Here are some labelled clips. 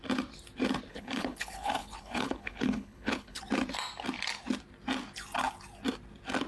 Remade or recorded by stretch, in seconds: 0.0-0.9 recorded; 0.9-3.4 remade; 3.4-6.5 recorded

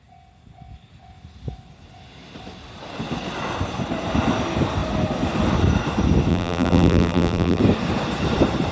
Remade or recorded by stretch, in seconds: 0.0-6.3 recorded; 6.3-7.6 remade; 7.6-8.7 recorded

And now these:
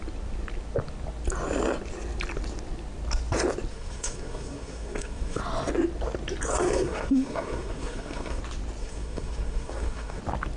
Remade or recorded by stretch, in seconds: 0.0-3.7 recorded; 3.7-5.4 remade; 5.4-6.5 recorded; 6.5-8.4 remade; 8.4-8.8 recorded; 8.8-10.2 remade; 10.2-10.6 recorded

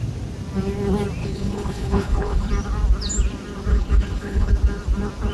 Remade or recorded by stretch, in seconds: 0.0-1.2 recorded; 1.2-2.5 remade; 2.5-3.7 recorded; 3.7-4.5 remade; 4.5-5.3 recorded

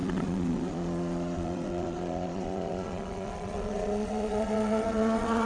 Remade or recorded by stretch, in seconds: 0.0-5.5 remade